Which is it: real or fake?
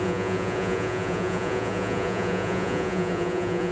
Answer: fake